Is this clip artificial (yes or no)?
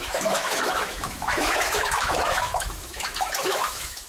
yes